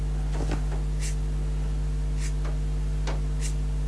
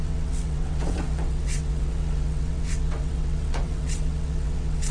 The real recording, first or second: first